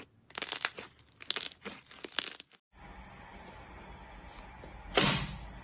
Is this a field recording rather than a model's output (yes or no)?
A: yes